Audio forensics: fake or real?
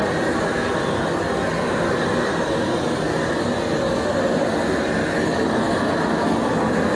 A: real